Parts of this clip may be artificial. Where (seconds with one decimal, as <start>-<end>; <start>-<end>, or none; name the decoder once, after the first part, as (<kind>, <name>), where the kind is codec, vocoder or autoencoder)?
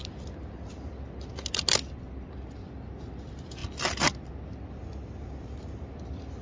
none